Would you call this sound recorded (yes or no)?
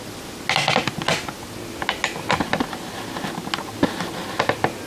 yes